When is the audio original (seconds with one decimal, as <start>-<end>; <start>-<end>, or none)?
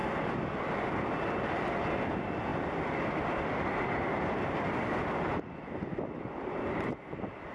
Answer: 0.0-2.5; 7.0-7.5